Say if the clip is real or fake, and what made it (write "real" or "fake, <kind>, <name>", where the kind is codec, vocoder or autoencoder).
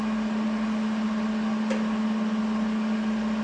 real